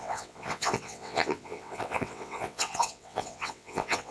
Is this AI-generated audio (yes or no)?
yes